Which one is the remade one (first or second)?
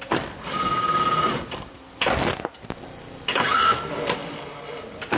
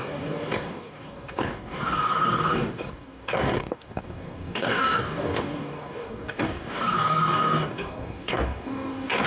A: second